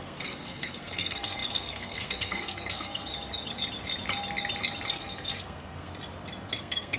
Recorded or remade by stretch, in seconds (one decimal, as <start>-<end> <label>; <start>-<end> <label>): 0.0-3.1 remade; 3.1-4.9 recorded; 4.9-5.9 remade; 5.9-6.6 recorded; 6.6-7.0 remade